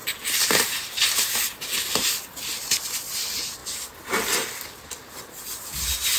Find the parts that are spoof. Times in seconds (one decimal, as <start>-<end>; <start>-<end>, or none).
none